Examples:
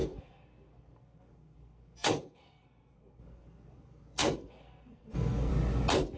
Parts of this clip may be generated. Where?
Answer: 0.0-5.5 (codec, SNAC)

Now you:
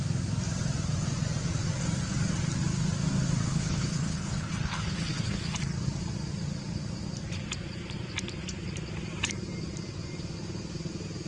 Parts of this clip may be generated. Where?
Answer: 3.5-5.4 (codec, HILCodec)

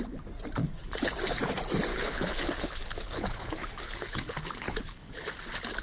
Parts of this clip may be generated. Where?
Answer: 0.6-1.4 (codec, HILCodec); 1.9-5.3

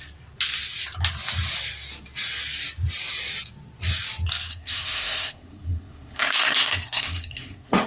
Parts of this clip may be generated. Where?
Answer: 4.5-7.9 (codec, SNAC)

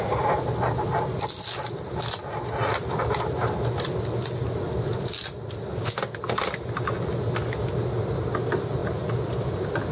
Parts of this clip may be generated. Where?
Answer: none

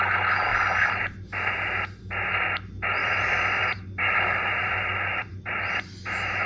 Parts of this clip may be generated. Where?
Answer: 3.0-5.4 (vocoder, BigVGAN v2)

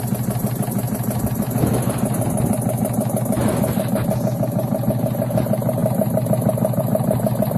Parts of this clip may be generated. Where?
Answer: none

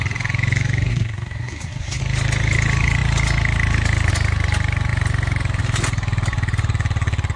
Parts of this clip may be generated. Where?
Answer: 0.9-2.0 (codec, SNAC)